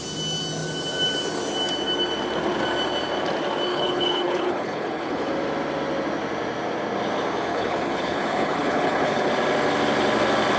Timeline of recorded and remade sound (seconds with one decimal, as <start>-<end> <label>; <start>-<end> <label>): 0.0-3.7 recorded; 3.7-5.3 remade; 5.3-7.5 recorded; 7.5-9.3 remade; 9.3-10.6 recorded